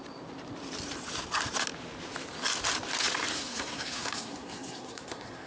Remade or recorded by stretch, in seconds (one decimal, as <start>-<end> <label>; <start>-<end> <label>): 0.0-3.3 recorded; 3.3-5.5 remade